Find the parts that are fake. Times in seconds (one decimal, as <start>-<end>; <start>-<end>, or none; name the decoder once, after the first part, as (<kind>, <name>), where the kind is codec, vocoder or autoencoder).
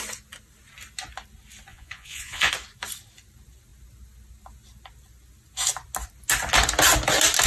1.7-2.5 (vocoder, Vocos)